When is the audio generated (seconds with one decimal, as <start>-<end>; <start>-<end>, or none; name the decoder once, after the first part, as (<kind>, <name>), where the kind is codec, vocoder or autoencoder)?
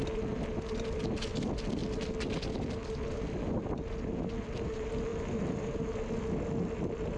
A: none